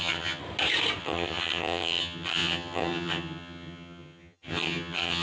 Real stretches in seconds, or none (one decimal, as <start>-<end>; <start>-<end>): 0.4-1.0